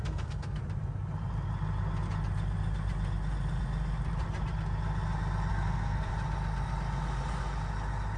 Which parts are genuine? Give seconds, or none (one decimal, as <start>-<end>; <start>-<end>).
0.6-5.5; 6.1-8.2